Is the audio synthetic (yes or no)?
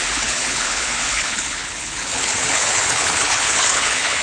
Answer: yes